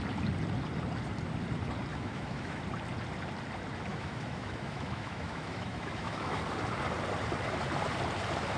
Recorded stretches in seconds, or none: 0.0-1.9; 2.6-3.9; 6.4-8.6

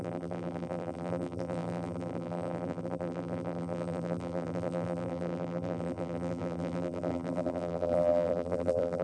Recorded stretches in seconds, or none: none

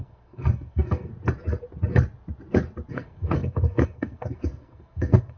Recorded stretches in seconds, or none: 1.1-2.9

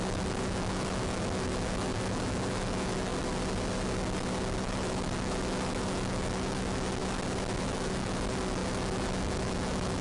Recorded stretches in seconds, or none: 3.1-4.6; 7.0-7.6

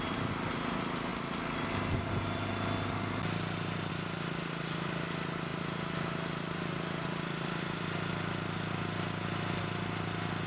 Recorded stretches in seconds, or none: 0.0-10.5